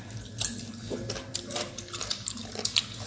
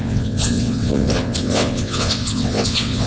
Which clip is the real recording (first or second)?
first